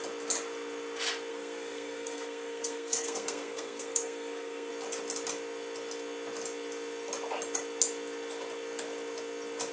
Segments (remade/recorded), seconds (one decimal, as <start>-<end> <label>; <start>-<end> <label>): 0.0-1.3 recorded; 1.3-4.7 remade; 4.7-9.7 recorded

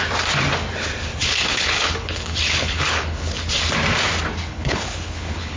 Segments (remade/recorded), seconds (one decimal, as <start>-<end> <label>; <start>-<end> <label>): 0.0-1.1 recorded; 1.1-3.3 remade; 3.3-4.4 recorded; 4.4-5.6 remade

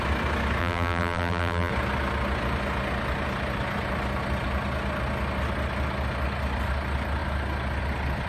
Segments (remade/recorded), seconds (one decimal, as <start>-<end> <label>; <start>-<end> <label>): 0.0-0.6 recorded; 0.6-1.7 remade; 1.7-8.3 recorded

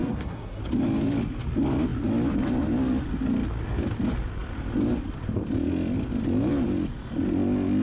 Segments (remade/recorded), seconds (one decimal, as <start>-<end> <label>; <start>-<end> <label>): 0.0-0.6 remade; 0.6-7.8 recorded

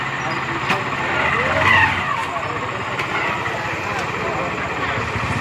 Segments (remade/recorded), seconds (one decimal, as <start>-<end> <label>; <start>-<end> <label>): 0.0-5.4 recorded

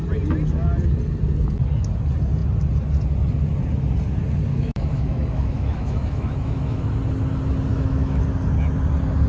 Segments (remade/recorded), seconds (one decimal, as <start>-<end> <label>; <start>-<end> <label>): 0.0-4.5 recorded; 4.5-6.9 remade; 6.9-7.7 recorded; 7.7-8.2 remade; 8.2-9.3 recorded